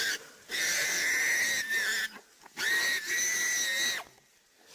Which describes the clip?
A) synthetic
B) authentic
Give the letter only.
B